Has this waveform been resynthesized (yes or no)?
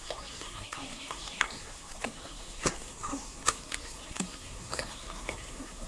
yes